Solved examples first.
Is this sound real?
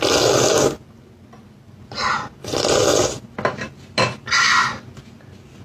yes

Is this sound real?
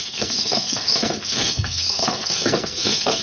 no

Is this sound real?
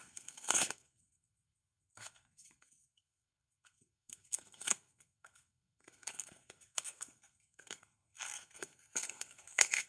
no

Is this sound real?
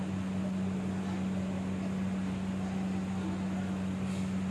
yes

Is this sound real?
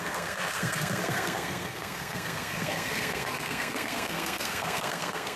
no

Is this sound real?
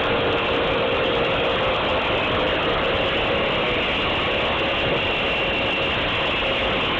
yes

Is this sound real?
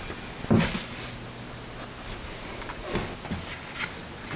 yes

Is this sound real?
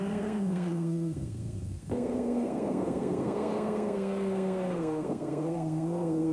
no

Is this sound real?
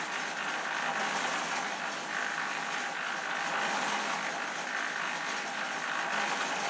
yes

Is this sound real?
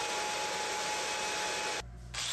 yes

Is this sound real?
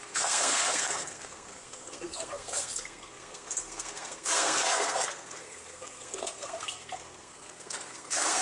no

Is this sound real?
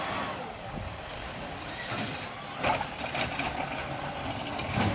yes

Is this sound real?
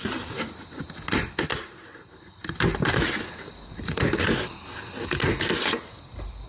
yes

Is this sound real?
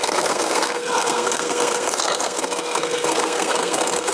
no